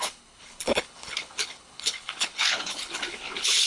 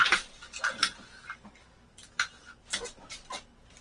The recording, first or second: second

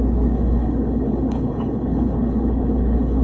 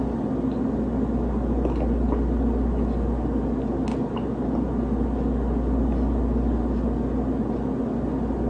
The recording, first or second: second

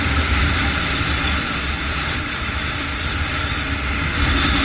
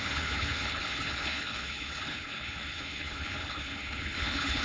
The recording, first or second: first